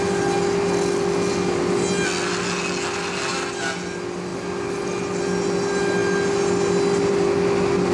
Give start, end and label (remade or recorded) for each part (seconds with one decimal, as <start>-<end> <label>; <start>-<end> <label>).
0.0-7.9 recorded